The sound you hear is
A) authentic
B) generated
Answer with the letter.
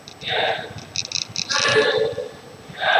A